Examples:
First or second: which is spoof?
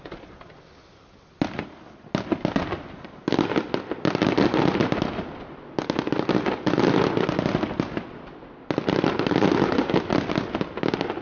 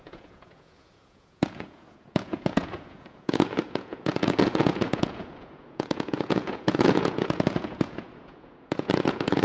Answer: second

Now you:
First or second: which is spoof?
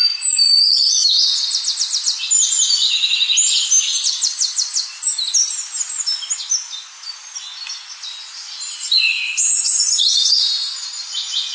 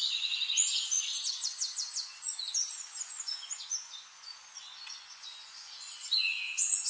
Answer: second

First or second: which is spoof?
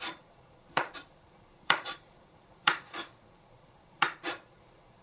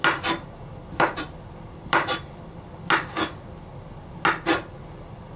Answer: first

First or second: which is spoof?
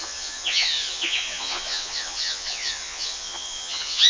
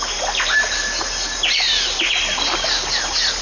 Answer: first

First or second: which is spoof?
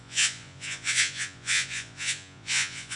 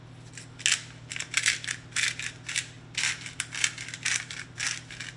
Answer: first